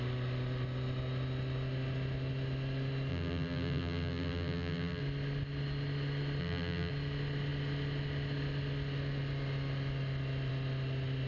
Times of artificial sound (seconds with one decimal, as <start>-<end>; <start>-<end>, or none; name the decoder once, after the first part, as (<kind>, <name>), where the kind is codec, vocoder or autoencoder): 3.1-5.0 (vocoder, BigVGAN v2); 6.4-6.9